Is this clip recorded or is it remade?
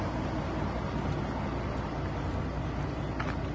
recorded